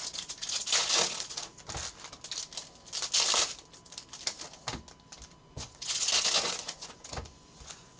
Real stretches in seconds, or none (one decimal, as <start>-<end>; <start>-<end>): 1.5-5.4